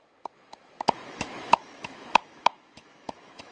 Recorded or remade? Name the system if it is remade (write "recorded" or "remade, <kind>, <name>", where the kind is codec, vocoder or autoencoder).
remade, autoencoder, DAC-VAE